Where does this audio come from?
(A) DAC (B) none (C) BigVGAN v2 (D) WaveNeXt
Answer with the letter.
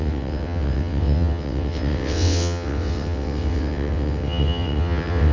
D